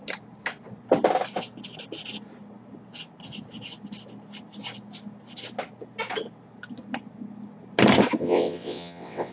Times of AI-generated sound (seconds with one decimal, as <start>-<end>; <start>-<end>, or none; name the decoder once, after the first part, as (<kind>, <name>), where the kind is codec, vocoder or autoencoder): 8.2-9.3 (vocoder, WaveNeXt)